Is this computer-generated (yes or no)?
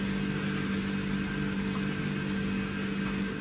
no